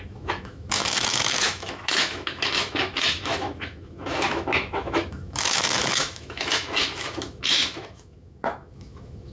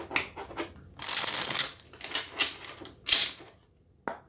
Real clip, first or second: second